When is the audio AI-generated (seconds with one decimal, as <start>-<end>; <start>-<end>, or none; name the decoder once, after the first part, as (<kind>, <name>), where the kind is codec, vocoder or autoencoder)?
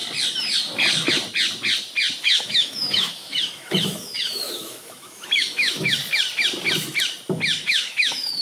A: 2.2-6.0 (autoencoder, DAC-VAE); 7.6-8.4